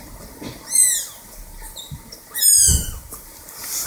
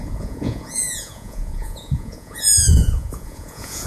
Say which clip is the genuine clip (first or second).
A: first